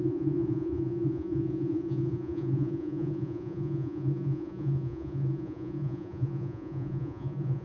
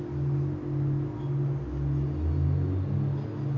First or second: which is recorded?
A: second